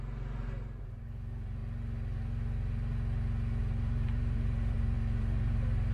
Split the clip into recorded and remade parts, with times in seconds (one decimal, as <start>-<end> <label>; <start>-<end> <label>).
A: 0.0-1.6 remade; 1.6-3.6 recorded; 3.6-5.9 remade